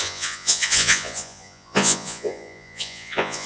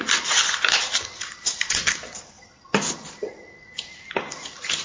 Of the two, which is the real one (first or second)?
second